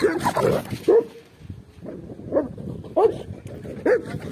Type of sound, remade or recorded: recorded